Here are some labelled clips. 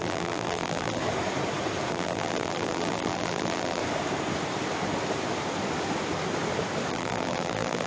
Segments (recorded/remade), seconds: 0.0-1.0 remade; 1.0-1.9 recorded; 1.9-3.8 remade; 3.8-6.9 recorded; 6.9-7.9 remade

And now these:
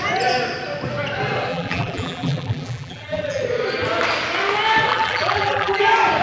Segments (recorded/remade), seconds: 0.0-1.5 recorded; 1.5-3.4 remade; 3.4-4.9 recorded; 4.9-5.8 remade; 5.8-6.2 recorded

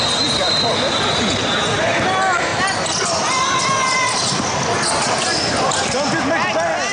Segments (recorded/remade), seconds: 0.0-6.9 recorded

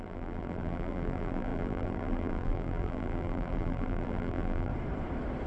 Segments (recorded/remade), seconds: 0.0-4.7 remade; 4.7-5.5 recorded

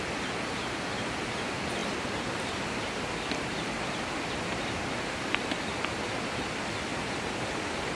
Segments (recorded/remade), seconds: 0.0-1.8 recorded; 1.8-6.5 remade; 6.5-6.9 recorded; 6.9-7.5 remade; 7.5-7.9 recorded

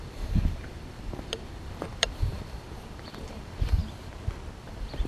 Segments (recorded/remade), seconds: 0.0-3.8 remade; 3.8-4.6 recorded; 4.6-5.1 remade

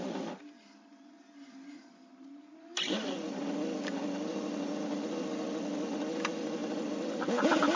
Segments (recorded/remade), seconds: 0.0-7.8 recorded

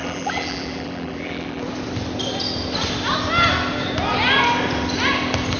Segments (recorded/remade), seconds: 0.0-1.6 remade; 1.6-5.6 recorded